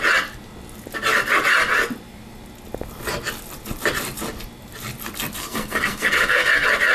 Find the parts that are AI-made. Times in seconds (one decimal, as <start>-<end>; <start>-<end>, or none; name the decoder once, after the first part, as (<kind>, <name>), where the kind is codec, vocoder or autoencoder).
5.4-6.5 (codec, SNAC)